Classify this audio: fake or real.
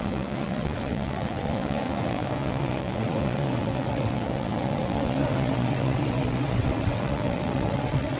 fake